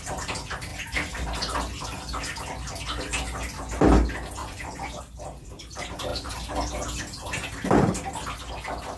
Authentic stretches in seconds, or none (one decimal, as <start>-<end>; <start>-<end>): 0.0-4.4; 5.0-9.0